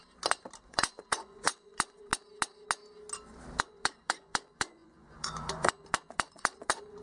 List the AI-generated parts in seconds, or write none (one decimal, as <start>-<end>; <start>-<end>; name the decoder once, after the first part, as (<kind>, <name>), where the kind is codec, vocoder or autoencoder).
0.7-2.1 (vocoder, Vocos); 3.6-7.0

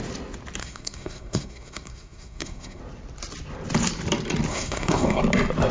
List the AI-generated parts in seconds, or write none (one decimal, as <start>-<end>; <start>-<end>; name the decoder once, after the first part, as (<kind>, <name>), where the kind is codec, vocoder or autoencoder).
0.6-2.8 (codec, SNAC); 4.5-5.2

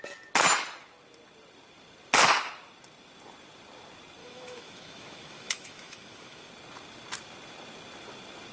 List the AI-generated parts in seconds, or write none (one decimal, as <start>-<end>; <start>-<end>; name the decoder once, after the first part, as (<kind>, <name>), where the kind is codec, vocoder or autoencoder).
4.2-6.5 (autoencoder, DAC-VAE)

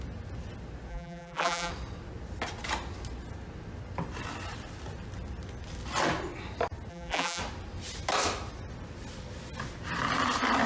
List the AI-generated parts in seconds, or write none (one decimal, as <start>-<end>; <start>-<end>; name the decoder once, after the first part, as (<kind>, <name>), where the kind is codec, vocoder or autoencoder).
0.9-1.7 (vocoder, BigVGAN v2); 6.9-7.4

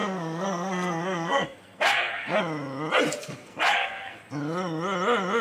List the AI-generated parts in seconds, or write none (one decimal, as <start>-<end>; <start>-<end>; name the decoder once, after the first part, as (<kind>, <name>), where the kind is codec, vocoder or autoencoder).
0.0-2.4 (codec, SNAC); 3.2-4.2

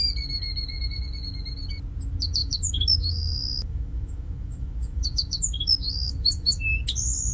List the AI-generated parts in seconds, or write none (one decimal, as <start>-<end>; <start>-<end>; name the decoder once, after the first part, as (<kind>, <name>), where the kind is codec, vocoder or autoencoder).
2.4-6.8 (autoencoder, DAC-VAE)

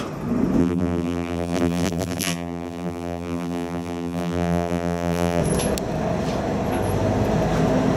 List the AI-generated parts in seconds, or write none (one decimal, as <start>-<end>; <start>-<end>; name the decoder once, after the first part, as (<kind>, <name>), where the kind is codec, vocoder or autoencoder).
0.6-5.4 (vocoder, BigVGAN v2)

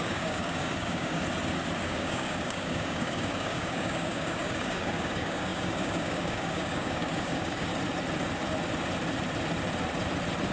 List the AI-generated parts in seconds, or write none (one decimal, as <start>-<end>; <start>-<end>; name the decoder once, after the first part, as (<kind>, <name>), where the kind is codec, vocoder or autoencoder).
0.0-1.2 (codec, DAC); 1.8-7.7